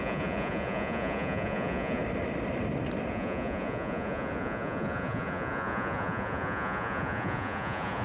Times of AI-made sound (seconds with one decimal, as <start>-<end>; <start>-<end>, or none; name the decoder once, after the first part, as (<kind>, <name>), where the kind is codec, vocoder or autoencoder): 0.0-2.0 (vocoder, Vocos); 3.1-8.0